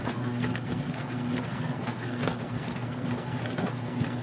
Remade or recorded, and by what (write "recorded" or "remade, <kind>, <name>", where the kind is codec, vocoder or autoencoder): remade, codec, SNAC